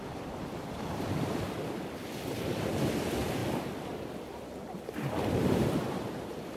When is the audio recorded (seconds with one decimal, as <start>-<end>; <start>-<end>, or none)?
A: none